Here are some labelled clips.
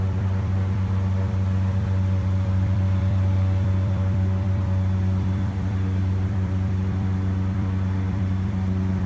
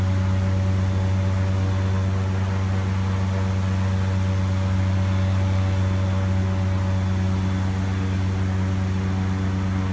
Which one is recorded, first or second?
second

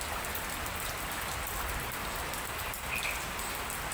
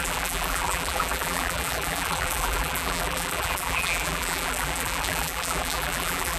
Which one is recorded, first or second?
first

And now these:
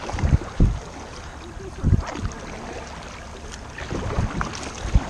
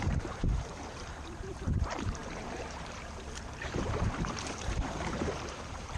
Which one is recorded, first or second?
first